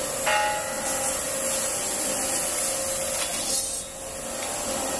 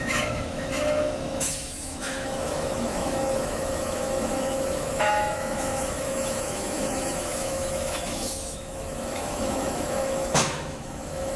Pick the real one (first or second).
first